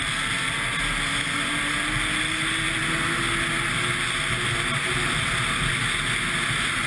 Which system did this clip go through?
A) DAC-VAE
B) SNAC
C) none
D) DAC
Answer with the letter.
C